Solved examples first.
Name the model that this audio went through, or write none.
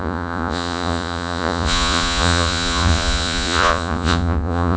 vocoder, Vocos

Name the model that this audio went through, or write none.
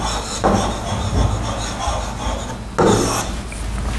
none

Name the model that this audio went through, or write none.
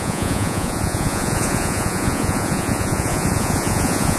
vocoder, Vocos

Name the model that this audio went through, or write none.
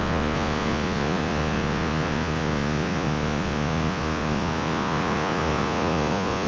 vocoder, Vocos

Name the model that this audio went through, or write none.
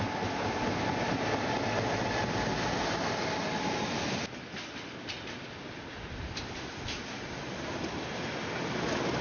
none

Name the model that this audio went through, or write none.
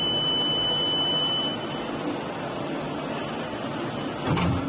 none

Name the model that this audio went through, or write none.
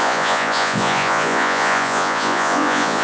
vocoder, Vocos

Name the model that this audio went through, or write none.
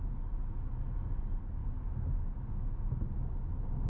none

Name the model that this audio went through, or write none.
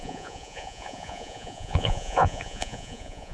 vocoder, Vocos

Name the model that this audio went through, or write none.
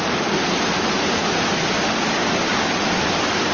none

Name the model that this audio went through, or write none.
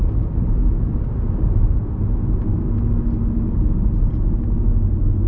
none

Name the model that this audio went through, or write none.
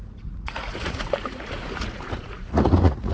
vocoder, Vocos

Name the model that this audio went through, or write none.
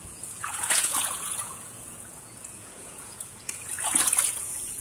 vocoder, Vocos